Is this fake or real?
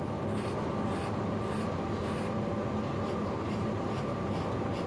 real